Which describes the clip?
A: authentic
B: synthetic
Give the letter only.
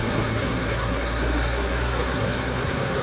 B